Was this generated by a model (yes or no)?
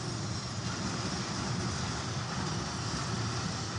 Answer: no